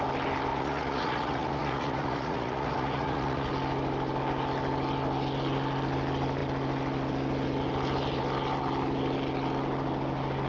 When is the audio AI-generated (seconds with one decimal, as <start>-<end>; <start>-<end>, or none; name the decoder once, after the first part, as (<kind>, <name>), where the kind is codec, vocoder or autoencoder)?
0.5-3.5 (vocoder, Vocos)